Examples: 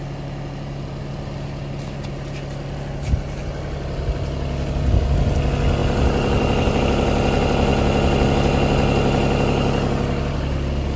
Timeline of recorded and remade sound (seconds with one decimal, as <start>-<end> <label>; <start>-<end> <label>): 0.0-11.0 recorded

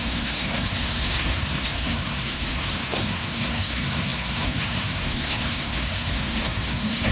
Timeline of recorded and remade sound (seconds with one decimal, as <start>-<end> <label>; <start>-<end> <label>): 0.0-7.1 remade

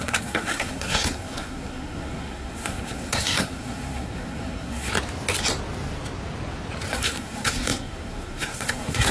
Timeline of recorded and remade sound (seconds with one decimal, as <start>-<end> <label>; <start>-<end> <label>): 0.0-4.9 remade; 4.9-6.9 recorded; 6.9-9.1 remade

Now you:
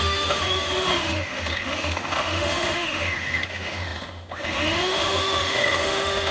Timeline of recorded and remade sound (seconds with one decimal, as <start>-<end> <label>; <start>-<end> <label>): 0.0-6.3 remade

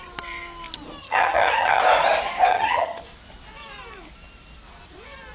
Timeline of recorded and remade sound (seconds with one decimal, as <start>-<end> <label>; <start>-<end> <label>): 0.0-1.0 recorded; 1.0-1.8 remade; 1.8-2.5 recorded; 2.5-3.0 remade; 3.0-5.3 recorded

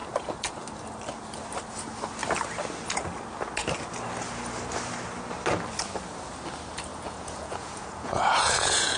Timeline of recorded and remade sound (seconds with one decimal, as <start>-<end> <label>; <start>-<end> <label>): 0.0-6.9 recorded; 6.9-9.0 remade